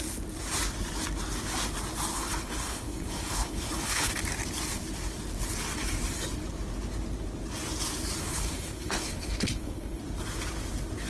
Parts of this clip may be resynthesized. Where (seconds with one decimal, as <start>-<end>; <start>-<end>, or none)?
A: 2.1-4.1; 8.2-10.0